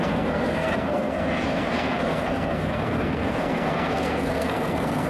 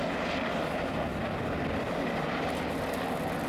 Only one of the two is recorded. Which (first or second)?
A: second